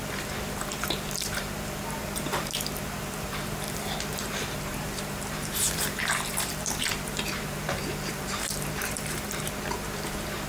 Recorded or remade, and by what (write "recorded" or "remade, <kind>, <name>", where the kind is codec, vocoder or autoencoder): remade, vocoder, BigVGAN v2